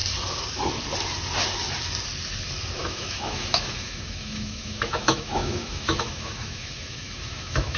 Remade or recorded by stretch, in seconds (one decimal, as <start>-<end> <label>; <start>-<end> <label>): 0.0-2.8 recorded; 2.8-7.8 remade